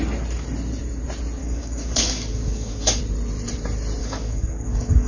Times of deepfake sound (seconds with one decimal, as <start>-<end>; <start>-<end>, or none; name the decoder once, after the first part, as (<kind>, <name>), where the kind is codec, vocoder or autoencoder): 1.4-3.0 (codec, DAC); 4.0-5.1